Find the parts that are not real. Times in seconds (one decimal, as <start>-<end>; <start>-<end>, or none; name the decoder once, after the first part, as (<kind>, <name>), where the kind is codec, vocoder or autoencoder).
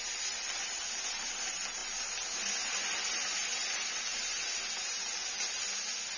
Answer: none